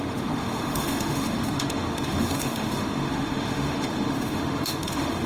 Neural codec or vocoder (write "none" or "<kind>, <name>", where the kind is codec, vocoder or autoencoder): autoencoder, DAC-VAE